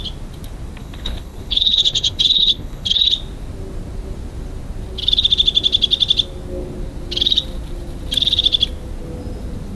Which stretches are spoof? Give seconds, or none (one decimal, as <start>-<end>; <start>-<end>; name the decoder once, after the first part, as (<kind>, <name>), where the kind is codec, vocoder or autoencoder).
0.8-3.1 (codec, HILCodec)